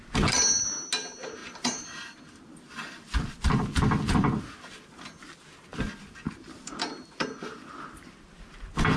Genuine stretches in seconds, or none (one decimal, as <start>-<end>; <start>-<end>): 0.0-1.4; 4.4-5.7; 8.0-9.0